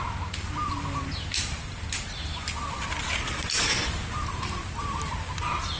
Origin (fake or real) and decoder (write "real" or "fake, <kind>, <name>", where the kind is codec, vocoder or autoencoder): real